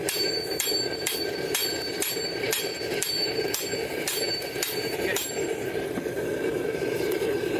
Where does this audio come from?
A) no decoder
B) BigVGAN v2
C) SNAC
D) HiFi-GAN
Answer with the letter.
B